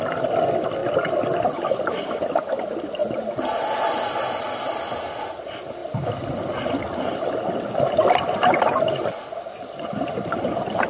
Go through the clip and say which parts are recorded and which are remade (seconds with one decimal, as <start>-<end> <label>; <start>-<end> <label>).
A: 0.0-10.9 recorded